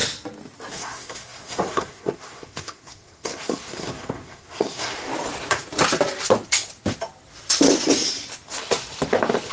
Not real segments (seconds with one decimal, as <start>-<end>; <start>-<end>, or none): 0.7-5.1